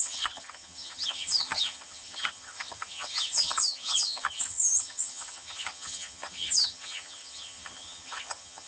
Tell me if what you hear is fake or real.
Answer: fake